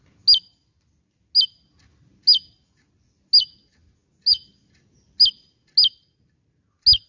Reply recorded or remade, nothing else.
recorded